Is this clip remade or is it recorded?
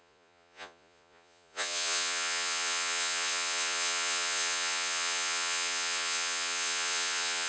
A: remade